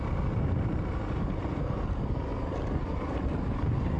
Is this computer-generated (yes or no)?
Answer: no